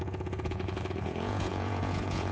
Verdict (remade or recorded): remade